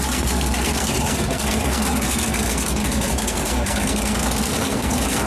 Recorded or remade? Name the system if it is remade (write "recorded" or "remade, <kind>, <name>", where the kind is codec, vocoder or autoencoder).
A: remade, codec, SNAC